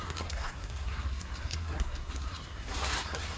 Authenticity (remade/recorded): remade